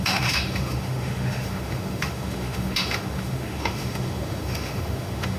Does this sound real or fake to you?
fake